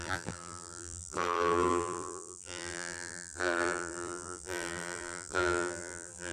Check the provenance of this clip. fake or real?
fake